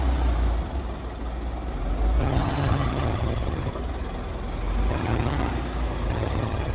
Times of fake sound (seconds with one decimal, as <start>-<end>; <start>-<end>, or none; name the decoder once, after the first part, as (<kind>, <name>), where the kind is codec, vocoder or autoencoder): 2.2-3.7 (vocoder, HiFi-GAN); 4.9-5.5; 6.1-6.7